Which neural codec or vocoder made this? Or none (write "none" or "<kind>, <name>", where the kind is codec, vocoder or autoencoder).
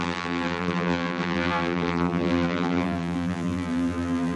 vocoder, BigVGAN v2